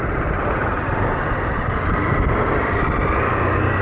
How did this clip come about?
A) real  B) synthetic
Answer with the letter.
A